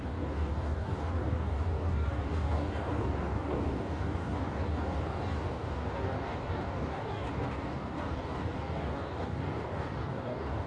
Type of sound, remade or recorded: remade